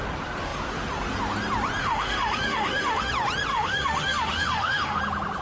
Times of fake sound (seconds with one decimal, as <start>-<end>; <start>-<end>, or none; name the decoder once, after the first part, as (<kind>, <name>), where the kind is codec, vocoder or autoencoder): 1.8-3.1 (autoencoder, DAC-VAE); 3.5-5.0